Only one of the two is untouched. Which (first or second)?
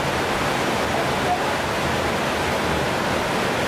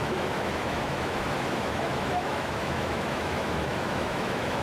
first